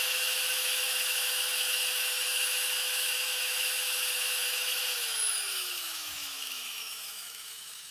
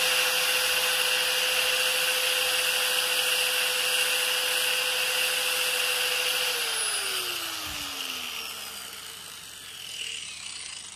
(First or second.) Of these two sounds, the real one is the second